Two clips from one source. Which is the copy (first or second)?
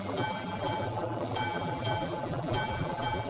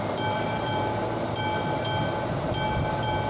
first